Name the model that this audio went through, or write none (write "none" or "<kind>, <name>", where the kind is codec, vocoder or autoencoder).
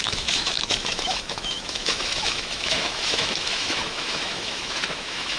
autoencoder, DAC-VAE